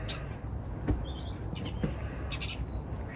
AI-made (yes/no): no